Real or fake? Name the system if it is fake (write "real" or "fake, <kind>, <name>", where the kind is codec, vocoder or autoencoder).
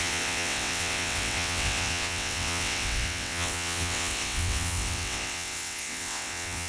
fake, vocoder, WaveNeXt